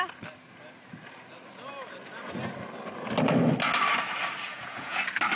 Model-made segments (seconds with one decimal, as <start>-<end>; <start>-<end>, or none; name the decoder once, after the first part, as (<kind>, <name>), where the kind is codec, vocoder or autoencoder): 4.5-5.0 (vocoder, Vocos)